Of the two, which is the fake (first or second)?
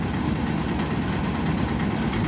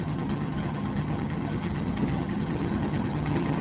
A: second